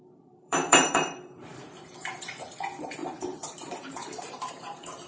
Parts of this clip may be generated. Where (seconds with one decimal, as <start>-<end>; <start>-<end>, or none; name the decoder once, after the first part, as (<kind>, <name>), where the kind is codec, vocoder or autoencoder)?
0.0-5.1 (vocoder, BigVGAN v2)